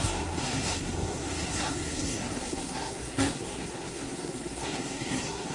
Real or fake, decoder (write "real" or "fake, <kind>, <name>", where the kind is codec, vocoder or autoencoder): fake, codec, SNAC